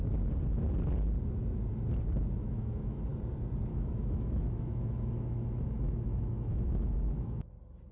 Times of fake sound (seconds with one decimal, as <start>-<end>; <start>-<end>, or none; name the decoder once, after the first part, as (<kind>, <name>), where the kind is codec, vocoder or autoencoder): 2.4-3.1 (autoencoder, DAC-VAE); 3.7-7.5